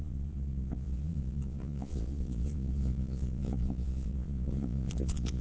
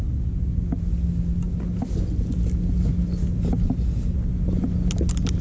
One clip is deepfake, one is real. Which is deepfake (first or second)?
first